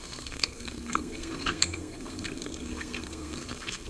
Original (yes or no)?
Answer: no